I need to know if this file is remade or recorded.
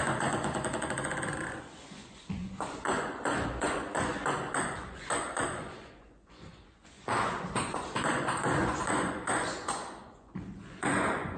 remade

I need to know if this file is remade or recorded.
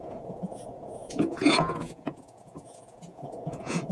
remade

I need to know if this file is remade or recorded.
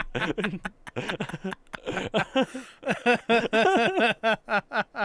recorded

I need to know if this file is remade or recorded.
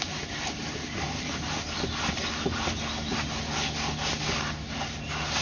recorded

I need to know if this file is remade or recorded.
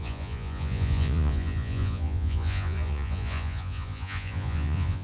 remade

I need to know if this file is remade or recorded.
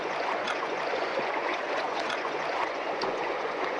remade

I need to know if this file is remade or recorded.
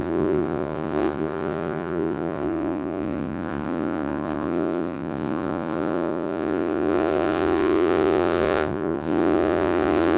remade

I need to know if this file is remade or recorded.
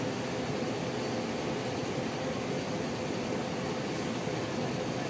recorded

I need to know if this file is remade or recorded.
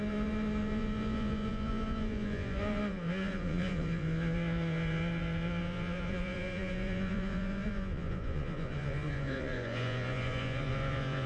remade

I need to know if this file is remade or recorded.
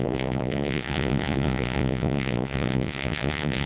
remade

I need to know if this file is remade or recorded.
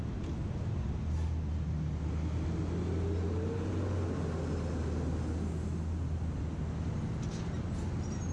recorded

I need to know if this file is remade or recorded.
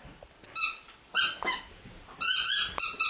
recorded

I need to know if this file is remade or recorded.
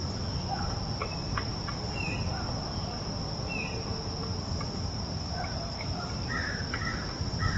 recorded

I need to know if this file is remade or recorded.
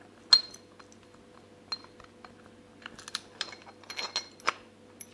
recorded